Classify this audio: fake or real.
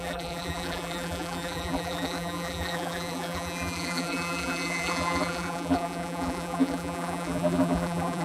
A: fake